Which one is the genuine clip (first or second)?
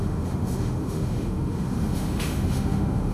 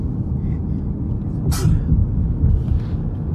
second